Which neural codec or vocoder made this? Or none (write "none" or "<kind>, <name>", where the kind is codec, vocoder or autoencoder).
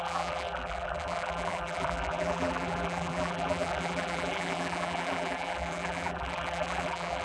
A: vocoder, BigVGAN v2